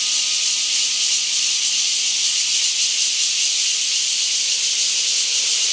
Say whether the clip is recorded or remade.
recorded